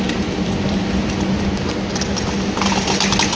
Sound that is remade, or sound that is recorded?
recorded